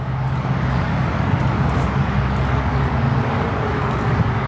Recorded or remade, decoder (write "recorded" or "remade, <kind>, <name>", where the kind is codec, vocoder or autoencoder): remade, codec, DAC